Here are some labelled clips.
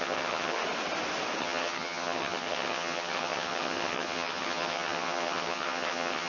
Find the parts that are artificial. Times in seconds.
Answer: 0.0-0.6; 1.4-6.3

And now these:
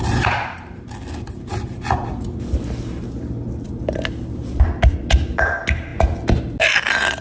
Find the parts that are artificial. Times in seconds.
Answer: none

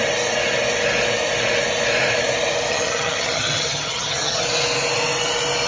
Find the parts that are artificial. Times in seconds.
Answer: 2.7-4.4

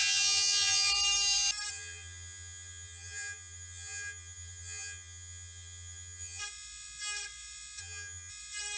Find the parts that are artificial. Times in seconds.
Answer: 0.0-0.9; 1.7-6.4; 7.8-8.3